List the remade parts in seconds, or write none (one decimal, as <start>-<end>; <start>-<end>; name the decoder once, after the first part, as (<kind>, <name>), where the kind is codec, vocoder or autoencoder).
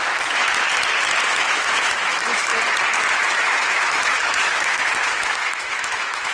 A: 0.0-0.4 (autoencoder, DAC-VAE); 1.3-2.5; 3.1-6.3